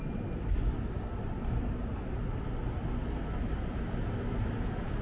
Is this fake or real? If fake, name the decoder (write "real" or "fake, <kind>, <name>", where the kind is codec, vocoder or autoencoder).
real